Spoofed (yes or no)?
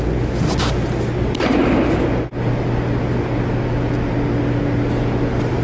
no